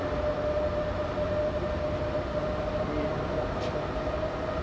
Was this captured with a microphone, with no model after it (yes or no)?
yes